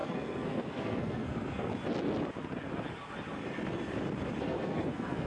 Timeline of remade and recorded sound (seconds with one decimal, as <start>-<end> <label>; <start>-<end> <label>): 0.0-1.7 remade; 1.7-4.4 recorded; 4.4-5.3 remade